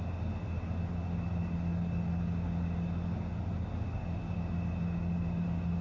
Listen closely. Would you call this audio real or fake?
real